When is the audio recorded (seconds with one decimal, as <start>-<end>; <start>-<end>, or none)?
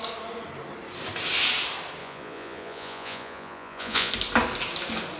0.0-2.0; 4.1-5.2